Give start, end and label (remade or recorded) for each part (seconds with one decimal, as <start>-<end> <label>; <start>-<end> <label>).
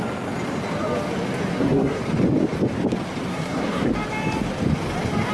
0.0-1.5 recorded; 1.5-2.0 remade; 2.0-3.3 recorded; 3.3-3.9 remade; 3.9-5.3 recorded